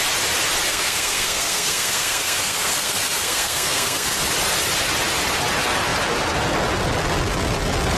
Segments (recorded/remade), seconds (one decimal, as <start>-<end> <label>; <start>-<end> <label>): 0.0-0.7 recorded; 0.7-4.2 remade; 4.2-8.0 recorded

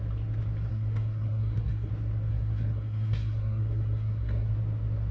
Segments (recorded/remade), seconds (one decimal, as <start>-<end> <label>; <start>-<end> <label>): 0.0-0.7 recorded; 0.7-1.9 remade; 1.9-2.3 recorded; 2.3-4.5 remade; 4.5-5.1 recorded

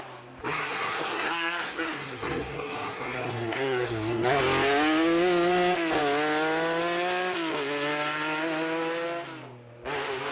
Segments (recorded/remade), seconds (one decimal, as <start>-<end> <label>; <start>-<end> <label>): 0.0-0.4 recorded; 0.4-4.4 remade; 4.4-10.3 recorded

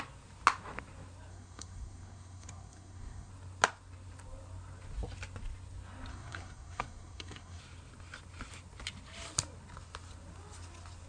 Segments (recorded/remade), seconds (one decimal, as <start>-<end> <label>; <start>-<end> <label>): 0.0-1.3 recorded; 1.3-3.3 remade; 3.3-6.1 recorded; 6.1-7.6 remade; 7.6-11.1 recorded

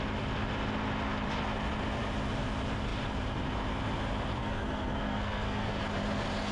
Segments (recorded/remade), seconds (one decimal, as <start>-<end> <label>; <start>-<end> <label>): 0.0-4.4 recorded; 4.4-5.8 remade; 5.8-6.5 recorded

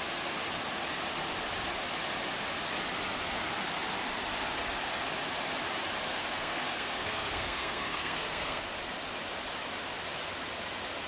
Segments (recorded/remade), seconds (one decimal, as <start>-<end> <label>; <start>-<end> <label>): 0.0-6.2 recorded; 6.2-8.6 remade; 8.6-11.1 recorded

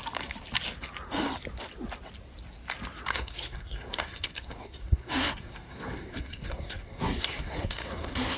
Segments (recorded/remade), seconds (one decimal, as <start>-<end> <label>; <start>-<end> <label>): 0.0-3.1 recorded; 3.1-8.4 remade